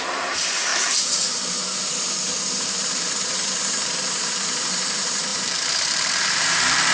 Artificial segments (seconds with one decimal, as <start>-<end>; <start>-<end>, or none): 0.0-6.9